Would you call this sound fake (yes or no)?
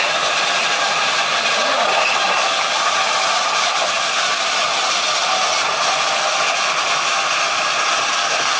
no